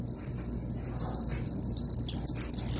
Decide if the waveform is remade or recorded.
recorded